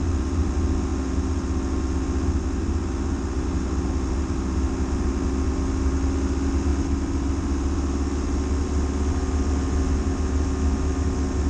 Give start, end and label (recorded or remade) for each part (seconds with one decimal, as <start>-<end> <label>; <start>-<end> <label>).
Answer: 0.0-11.5 recorded